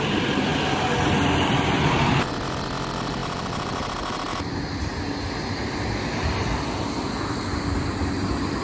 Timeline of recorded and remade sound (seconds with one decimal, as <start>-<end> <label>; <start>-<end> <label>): 0.0-8.6 recorded